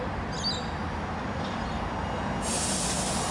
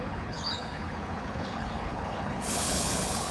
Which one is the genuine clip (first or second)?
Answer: first